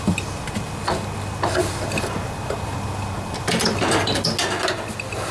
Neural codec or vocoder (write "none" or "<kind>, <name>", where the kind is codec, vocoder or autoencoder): none